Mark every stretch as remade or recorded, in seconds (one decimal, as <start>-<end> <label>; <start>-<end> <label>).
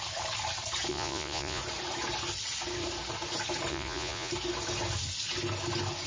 0.0-0.9 recorded; 0.9-1.6 remade; 1.6-3.7 recorded; 3.7-4.3 remade; 4.3-6.1 recorded